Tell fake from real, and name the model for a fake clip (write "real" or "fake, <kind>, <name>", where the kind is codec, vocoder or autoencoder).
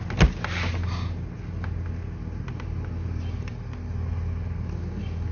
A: real